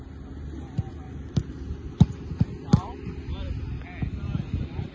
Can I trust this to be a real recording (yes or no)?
yes